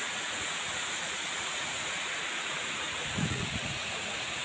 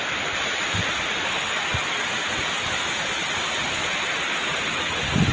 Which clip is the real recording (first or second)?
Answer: second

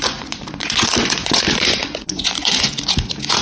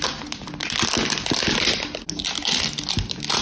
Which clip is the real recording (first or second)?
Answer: second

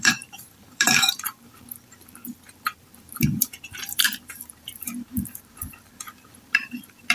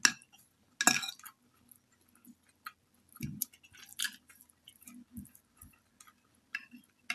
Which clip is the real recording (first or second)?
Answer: second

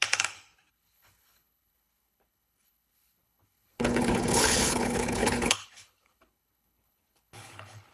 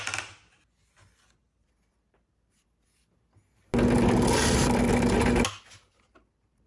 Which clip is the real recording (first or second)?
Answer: second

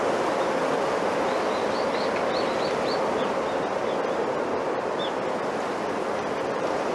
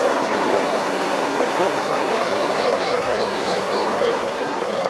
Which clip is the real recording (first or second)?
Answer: first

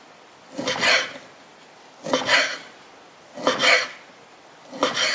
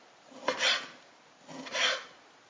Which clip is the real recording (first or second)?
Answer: second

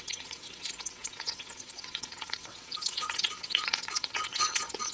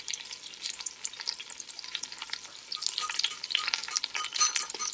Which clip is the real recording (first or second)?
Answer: second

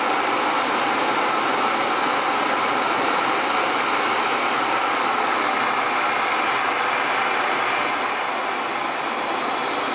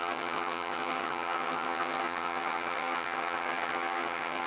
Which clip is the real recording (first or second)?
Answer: first